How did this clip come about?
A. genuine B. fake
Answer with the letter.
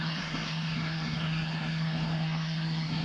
B